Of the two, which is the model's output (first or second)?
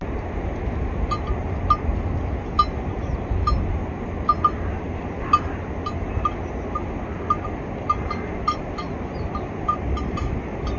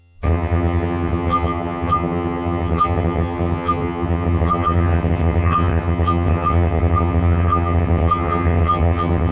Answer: second